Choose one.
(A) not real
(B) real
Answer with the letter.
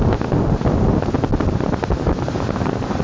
B